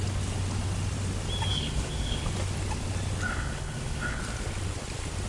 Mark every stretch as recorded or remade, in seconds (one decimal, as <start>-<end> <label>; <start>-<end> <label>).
0.0-1.5 recorded; 1.5-2.3 remade; 2.3-3.3 recorded; 3.3-4.2 remade; 4.2-5.3 recorded